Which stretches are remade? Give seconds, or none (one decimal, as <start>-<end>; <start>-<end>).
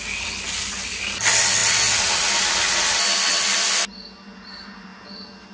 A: none